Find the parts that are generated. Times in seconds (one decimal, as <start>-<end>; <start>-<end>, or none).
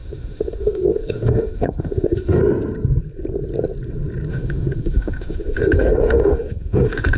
0.0-2.4; 4.3-7.2